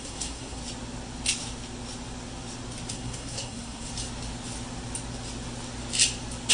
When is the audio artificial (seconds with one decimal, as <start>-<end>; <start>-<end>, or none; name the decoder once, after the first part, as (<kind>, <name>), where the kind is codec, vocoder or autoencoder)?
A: 0.0-0.6 (codec, SNAC); 2.9-3.9